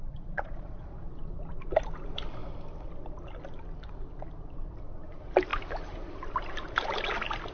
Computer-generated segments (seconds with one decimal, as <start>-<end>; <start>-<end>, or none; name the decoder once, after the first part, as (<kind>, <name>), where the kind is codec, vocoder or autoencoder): 0.0-0.8 (vocoder, Vocos)